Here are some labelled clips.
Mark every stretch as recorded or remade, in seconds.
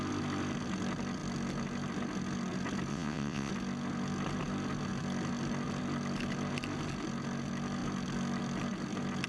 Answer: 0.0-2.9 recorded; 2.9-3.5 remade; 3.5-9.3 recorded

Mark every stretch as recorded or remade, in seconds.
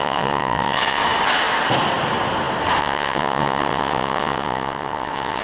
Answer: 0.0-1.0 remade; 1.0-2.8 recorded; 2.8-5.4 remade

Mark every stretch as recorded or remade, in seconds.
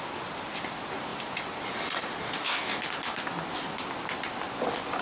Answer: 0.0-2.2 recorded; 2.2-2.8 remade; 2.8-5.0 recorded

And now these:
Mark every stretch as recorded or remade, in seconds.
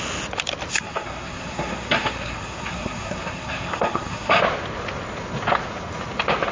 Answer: 0.0-0.7 recorded; 0.7-4.4 remade; 4.4-6.5 recorded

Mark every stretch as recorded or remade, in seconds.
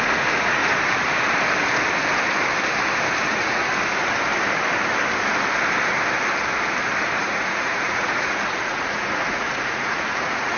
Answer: 0.0-0.6 remade; 0.6-3.2 recorded; 3.2-3.7 remade; 3.7-7.2 recorded; 7.2-10.6 remade